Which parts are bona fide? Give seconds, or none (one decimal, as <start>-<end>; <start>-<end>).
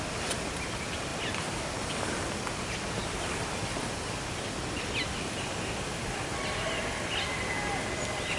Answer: 0.0-8.4